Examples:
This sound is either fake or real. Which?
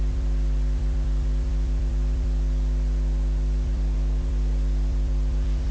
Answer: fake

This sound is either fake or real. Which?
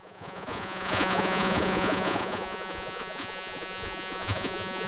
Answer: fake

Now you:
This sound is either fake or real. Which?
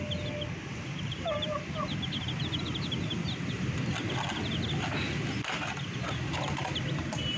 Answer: real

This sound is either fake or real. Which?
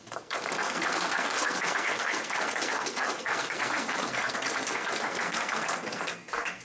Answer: fake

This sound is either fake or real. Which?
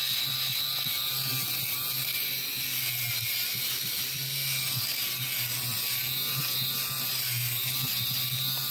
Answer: real